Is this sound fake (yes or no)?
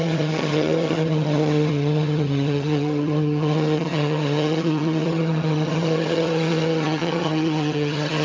yes